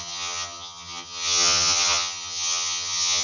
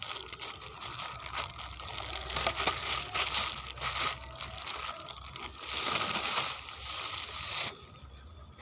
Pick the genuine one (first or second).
second